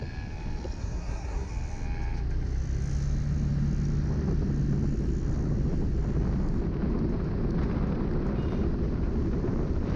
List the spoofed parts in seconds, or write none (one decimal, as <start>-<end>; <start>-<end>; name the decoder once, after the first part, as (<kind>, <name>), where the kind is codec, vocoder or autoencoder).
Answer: 0.8-1.5 (codec, SNAC)